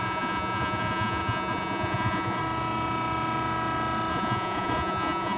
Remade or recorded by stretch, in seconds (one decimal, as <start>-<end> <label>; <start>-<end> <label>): 0.0-2.4 remade; 2.4-4.1 recorded; 4.1-5.4 remade